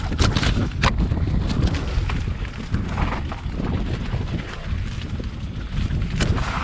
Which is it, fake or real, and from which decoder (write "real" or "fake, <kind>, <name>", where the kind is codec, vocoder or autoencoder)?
real